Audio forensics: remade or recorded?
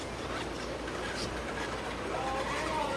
recorded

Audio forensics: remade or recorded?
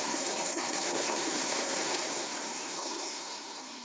remade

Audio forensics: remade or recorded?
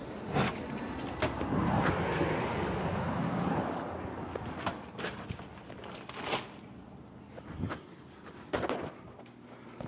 recorded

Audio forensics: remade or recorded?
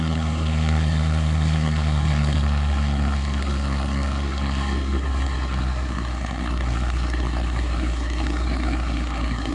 remade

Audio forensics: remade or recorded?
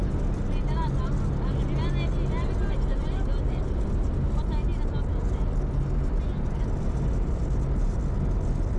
recorded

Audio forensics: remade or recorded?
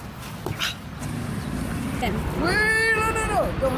recorded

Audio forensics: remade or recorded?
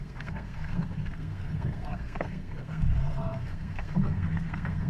remade